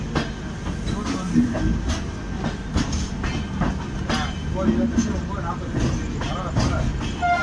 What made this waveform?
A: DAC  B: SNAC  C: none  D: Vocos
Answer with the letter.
C